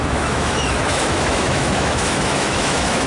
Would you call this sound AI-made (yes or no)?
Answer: yes